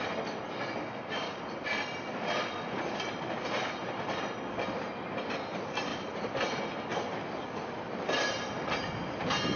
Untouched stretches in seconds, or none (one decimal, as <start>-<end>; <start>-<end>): 0.0-0.8; 1.4-9.6